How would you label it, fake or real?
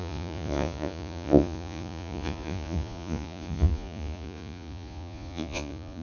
fake